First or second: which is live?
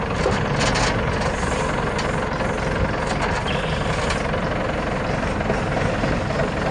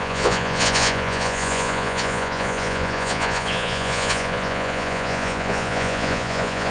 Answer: first